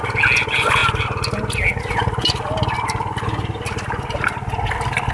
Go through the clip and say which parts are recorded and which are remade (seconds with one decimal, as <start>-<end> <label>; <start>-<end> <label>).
0.0-5.1 recorded